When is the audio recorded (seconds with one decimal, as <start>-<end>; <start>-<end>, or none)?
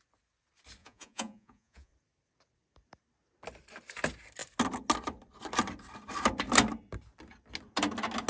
0.0-0.8; 1.9-8.3